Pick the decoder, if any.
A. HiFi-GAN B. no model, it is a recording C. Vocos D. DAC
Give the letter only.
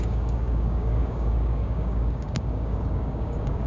D